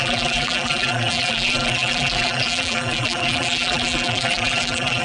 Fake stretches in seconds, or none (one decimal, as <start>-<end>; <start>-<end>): 0.0-5.0